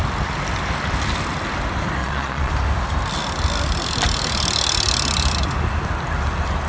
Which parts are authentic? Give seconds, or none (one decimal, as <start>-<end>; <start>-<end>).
0.0-2.0; 2.5-6.7